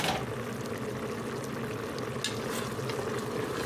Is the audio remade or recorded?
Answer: recorded